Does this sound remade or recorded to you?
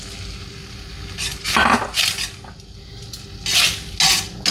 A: recorded